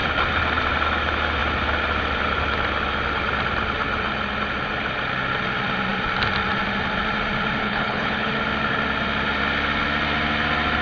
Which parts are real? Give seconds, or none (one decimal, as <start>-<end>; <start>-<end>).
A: 0.0-7.6; 8.3-10.8